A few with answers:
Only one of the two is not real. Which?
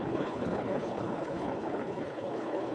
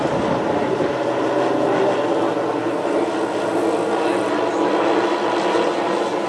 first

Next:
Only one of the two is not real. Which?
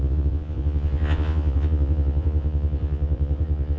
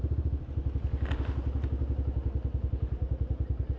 first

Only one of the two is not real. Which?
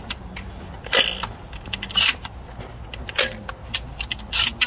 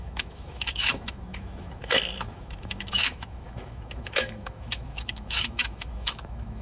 second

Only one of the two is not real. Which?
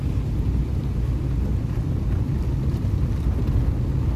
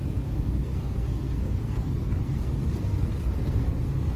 second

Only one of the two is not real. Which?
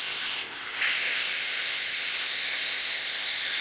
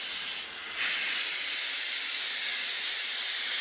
first